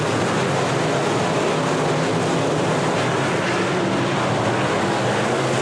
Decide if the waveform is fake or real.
real